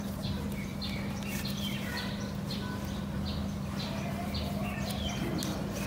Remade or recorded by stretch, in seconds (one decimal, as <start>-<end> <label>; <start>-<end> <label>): 0.0-5.9 recorded